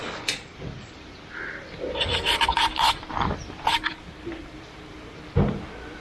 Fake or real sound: fake